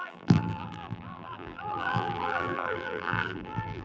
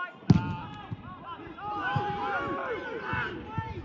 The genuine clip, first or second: second